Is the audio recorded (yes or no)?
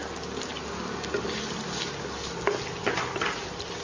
yes